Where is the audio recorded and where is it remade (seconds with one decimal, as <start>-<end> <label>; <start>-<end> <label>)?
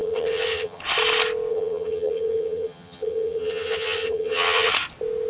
0.0-0.8 remade; 0.8-1.5 recorded; 1.5-4.7 remade; 4.7-5.3 recorded